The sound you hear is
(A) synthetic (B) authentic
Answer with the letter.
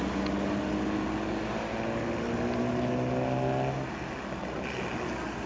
B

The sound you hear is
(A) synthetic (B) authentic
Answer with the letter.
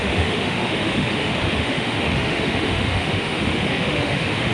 A